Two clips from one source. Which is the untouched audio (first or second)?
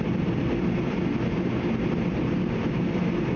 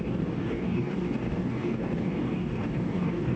first